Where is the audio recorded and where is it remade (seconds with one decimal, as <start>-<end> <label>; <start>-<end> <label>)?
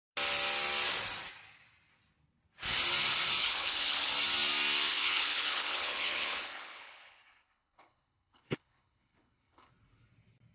0.0-3.4 recorded; 3.4-4.1 remade; 4.1-4.9 recorded; 4.9-9.7 remade; 9.7-10.5 recorded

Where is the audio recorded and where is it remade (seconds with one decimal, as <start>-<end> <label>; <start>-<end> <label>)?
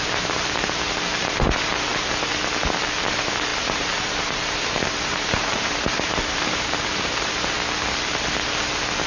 0.0-3.5 recorded; 3.5-7.3 remade; 7.3-9.1 recorded